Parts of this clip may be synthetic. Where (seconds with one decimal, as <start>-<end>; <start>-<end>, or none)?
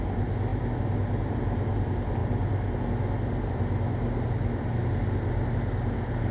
none